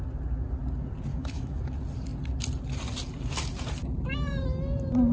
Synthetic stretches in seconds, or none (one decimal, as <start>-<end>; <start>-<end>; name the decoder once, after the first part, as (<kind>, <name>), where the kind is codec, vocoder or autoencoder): 1.1-1.6 (autoencoder, DAC-VAE)